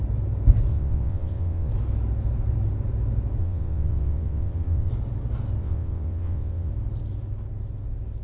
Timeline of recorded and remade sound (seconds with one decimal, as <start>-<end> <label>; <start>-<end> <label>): 0.0-0.7 recorded; 0.7-1.7 remade; 1.7-3.4 recorded; 3.4-4.9 remade; 4.9-5.6 recorded; 5.6-6.7 remade; 6.7-8.2 recorded